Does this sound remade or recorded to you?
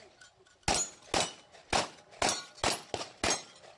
recorded